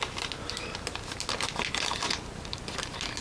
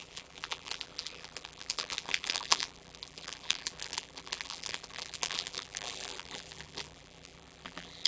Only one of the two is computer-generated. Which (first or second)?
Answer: second